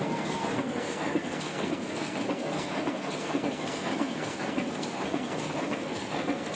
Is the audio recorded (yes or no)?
no